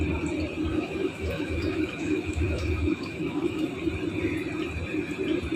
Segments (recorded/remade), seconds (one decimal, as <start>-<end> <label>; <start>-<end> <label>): 0.0-0.7 recorded; 0.7-3.7 remade; 3.7-5.6 recorded